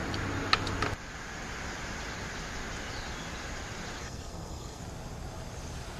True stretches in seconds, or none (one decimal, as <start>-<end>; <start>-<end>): 0.0-4.0; 4.8-6.0